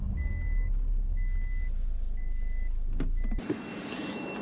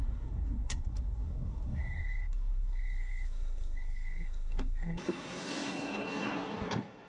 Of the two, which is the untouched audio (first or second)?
first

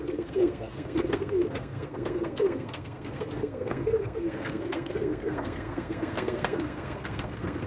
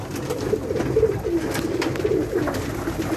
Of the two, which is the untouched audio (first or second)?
second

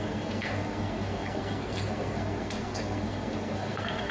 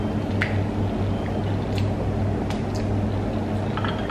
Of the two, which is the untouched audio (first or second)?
second